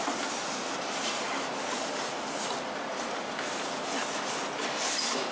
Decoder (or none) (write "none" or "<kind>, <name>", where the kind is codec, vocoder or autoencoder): none